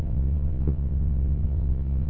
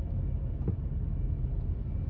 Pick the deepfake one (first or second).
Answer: first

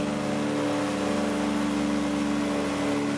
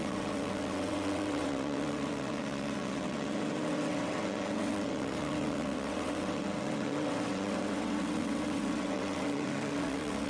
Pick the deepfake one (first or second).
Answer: second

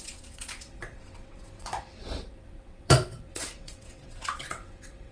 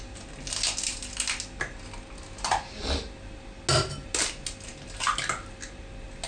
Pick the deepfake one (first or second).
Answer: first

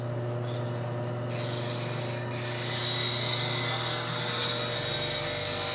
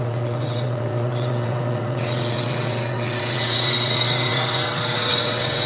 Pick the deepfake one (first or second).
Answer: second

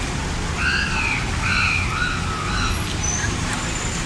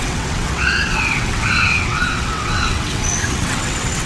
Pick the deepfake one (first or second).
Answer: second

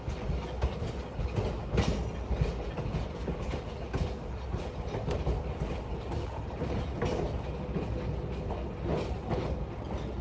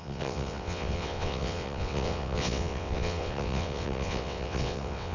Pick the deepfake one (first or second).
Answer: second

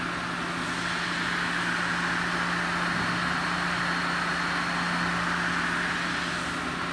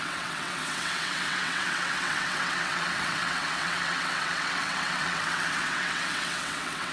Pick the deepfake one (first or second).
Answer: second